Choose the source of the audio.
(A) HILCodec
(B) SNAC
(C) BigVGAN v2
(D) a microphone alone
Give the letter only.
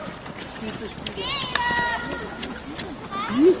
D